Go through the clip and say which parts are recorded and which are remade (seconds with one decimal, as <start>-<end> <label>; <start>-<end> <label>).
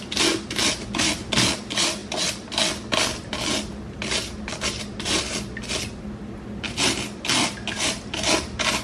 0.0-8.8 recorded